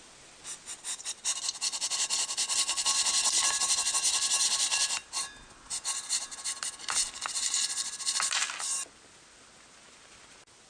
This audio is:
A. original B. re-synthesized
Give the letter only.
A